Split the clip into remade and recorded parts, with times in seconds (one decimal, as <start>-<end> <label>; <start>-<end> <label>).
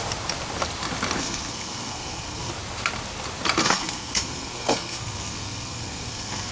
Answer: 0.0-1.2 recorded; 1.2-2.5 remade; 2.5-3.6 recorded; 3.6-6.5 remade